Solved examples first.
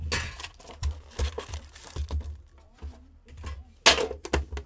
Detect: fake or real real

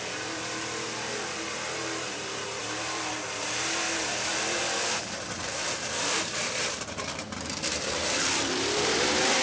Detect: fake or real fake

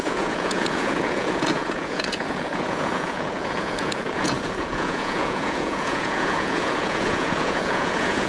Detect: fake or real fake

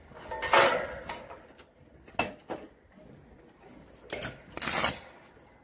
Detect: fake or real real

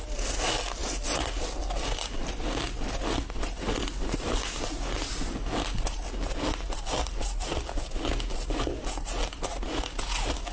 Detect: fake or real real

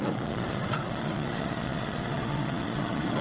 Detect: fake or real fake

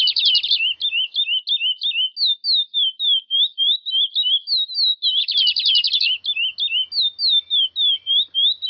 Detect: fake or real real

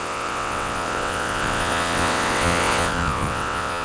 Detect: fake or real fake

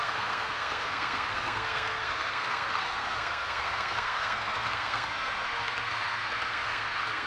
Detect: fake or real fake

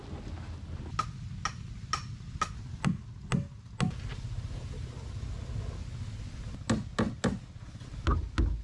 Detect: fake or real real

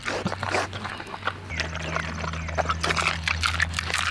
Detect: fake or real real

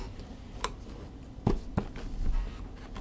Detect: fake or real real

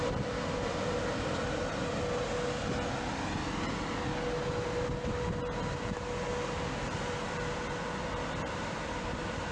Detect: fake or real real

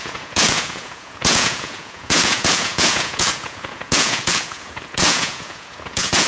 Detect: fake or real fake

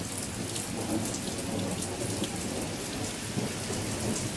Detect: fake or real real